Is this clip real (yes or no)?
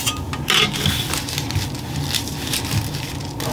yes